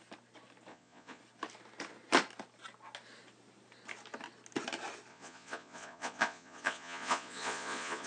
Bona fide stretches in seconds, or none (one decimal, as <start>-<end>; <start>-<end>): 0.0-0.7; 1.2-5.1